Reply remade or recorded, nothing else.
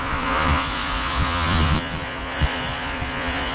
remade